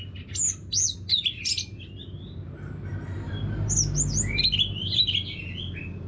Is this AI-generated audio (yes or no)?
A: no